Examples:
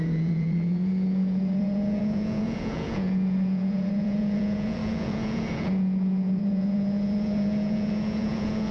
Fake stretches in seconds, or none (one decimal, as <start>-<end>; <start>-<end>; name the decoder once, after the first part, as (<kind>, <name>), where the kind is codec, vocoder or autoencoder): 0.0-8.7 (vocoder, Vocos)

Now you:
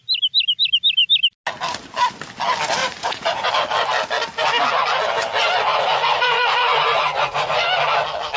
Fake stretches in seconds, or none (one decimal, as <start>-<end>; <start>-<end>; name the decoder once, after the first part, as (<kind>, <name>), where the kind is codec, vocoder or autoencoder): 2.8-3.5 (vocoder, Vocos); 5.7-7.5

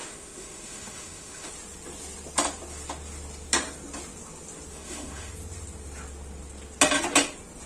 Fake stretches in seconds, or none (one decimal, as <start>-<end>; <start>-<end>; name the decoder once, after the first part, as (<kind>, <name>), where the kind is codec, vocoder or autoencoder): 0.0-1.5 (autoencoder, DAC-VAE); 4.7-5.3

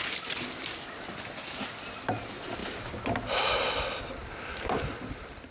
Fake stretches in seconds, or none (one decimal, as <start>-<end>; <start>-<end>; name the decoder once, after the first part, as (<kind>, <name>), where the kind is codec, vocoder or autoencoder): none

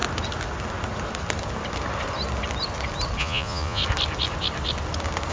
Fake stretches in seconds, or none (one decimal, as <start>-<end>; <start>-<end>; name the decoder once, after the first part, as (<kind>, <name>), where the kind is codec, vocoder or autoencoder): 3.2-3.8 (vocoder, Vocos)